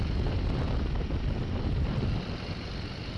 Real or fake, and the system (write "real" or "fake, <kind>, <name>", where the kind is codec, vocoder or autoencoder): real